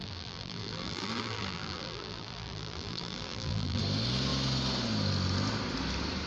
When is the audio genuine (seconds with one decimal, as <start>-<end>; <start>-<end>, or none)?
3.8-6.3